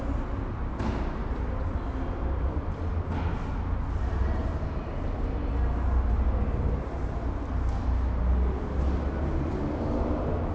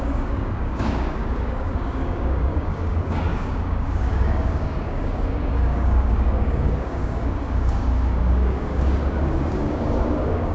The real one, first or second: first